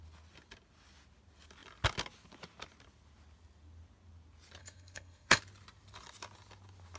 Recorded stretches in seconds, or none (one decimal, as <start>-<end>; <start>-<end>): 0.0-4.6; 5.4-7.0